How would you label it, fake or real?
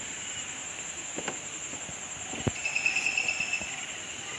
real